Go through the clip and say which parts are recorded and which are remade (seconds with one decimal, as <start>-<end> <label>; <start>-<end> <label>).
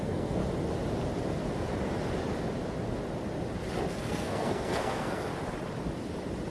0.0-0.4 remade; 0.4-3.9 recorded; 3.9-5.3 remade; 5.3-6.5 recorded